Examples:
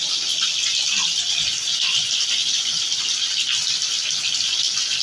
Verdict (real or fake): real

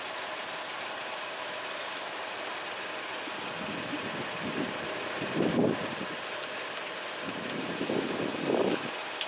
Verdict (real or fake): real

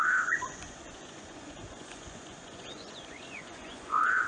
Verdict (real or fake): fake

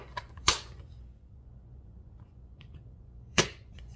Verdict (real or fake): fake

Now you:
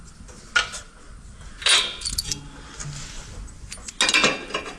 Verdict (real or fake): real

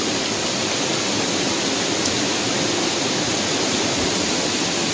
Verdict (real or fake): real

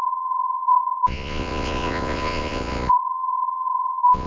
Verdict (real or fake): fake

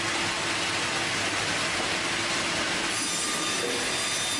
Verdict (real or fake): real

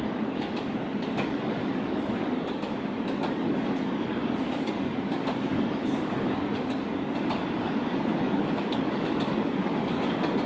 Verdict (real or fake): fake